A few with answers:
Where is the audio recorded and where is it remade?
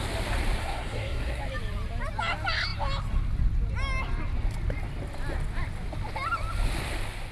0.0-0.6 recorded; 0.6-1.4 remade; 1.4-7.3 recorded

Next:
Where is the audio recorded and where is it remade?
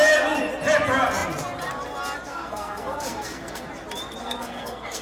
0.0-2.3 recorded; 2.3-3.7 remade; 3.7-4.2 recorded; 4.2-5.0 remade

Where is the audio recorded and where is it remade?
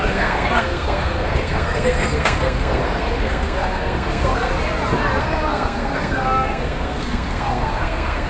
0.0-4.5 remade; 4.5-5.2 recorded; 5.2-8.3 remade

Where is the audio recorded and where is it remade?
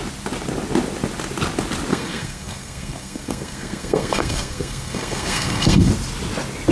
0.0-1.9 recorded; 1.9-5.9 remade; 5.9-6.7 recorded